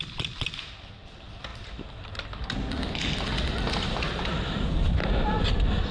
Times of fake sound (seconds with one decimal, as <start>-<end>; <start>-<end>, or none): none